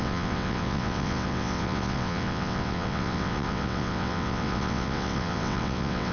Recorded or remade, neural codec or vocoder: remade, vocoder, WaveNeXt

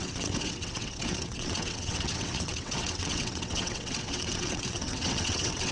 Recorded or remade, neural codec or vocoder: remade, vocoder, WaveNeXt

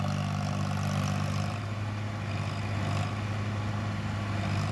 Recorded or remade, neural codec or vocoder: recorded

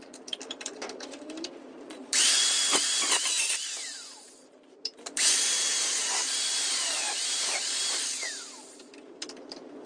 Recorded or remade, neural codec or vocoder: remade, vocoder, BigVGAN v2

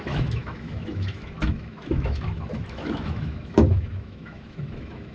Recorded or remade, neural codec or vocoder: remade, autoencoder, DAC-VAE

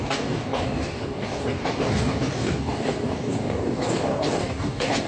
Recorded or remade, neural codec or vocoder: remade, codec, DAC